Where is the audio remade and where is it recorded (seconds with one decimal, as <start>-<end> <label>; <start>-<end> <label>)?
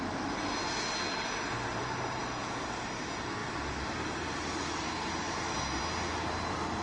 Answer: 0.0-6.8 recorded